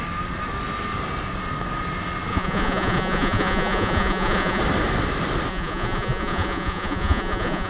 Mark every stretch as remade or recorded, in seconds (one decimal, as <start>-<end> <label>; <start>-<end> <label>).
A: 0.0-2.3 recorded; 2.3-4.6 remade; 4.6-5.5 recorded; 5.5-7.7 remade